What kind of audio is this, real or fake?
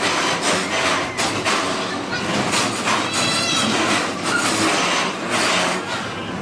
real